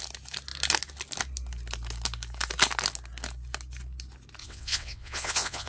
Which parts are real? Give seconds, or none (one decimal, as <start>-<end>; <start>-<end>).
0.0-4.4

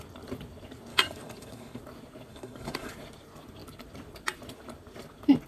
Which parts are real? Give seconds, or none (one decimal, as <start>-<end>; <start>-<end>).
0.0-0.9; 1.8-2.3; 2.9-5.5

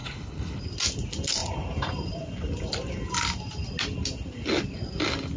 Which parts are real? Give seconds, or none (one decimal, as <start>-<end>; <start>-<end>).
0.6-5.4